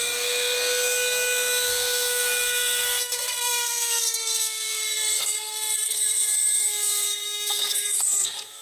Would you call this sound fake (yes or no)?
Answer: yes